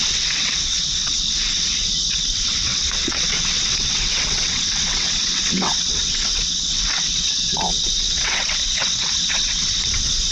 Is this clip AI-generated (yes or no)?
yes